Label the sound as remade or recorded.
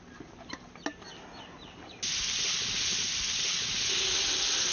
recorded